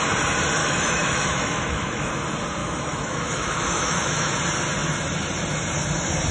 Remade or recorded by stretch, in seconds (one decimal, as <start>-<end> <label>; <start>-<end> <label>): 0.0-0.6 recorded; 0.6-2.1 remade; 2.1-2.6 recorded; 2.6-4.3 remade; 4.3-6.3 recorded